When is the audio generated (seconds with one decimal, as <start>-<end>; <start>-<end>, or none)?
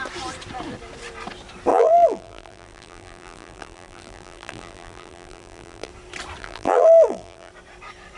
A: 1.7-5.9; 6.4-7.5